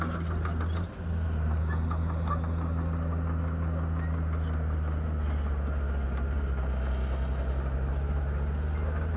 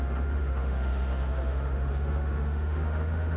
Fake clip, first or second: second